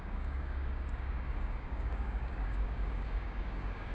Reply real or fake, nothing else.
fake